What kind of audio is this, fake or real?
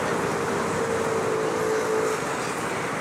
real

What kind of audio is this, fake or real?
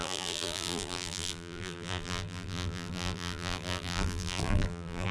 fake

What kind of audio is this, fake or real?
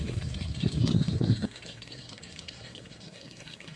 fake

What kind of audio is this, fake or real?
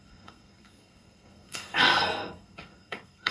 fake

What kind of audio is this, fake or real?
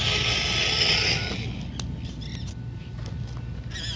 real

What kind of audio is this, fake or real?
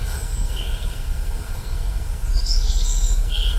fake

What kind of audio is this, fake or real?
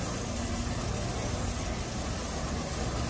real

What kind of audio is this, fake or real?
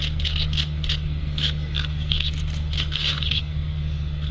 fake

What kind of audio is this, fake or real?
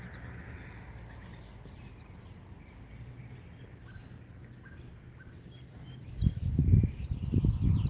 real